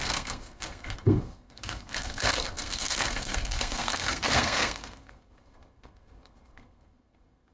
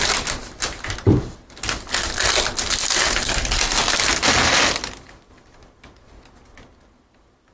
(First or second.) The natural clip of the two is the second